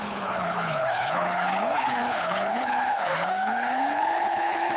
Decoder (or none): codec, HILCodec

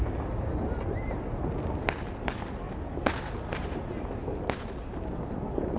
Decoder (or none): none